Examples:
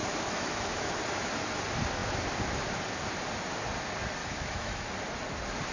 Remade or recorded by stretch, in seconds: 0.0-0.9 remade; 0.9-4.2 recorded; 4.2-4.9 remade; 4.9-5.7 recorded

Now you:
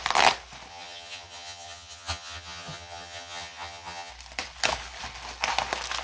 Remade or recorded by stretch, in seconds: 0.0-0.7 recorded; 0.7-4.1 remade; 4.1-6.0 recorded

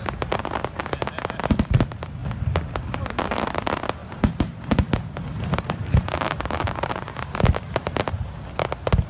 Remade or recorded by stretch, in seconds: 0.0-4.0 recorded; 4.0-8.5 remade; 8.5-9.1 recorded

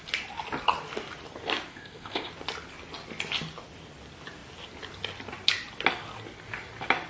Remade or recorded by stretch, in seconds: 0.0-1.7 recorded; 1.7-2.3 remade; 2.3-7.1 recorded

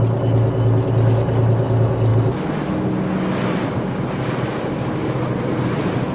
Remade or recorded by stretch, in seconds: 0.0-6.1 recorded

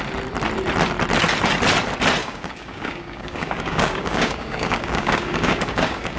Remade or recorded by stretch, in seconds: 0.0-2.2 recorded; 2.2-6.2 remade